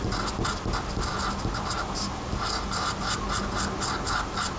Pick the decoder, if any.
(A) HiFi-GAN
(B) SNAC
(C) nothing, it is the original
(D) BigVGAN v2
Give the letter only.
C